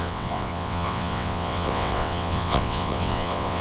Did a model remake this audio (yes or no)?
yes